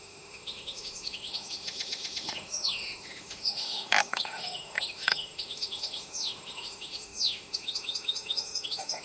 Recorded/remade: remade